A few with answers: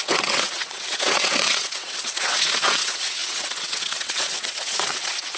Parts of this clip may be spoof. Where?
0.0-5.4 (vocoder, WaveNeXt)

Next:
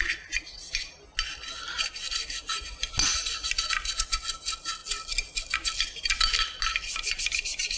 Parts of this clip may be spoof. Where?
none

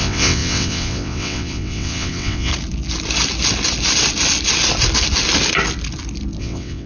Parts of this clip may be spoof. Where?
0.0-2.5 (vocoder, WaveNeXt); 6.4-6.9